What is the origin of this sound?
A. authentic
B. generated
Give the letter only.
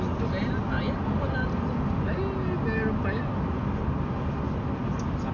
A